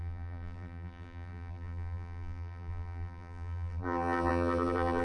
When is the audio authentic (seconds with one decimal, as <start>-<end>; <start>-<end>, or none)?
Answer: none